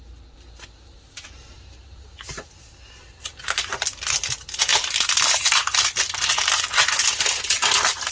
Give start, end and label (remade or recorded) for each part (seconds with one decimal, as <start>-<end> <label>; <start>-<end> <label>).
0.0-8.1 recorded